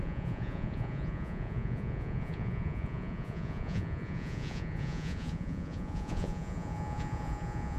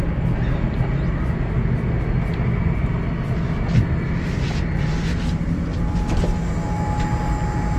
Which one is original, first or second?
second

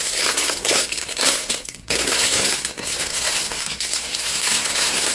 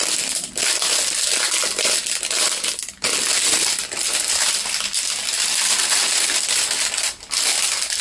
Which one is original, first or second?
second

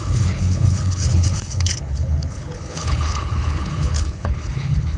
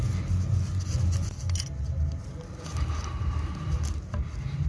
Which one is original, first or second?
second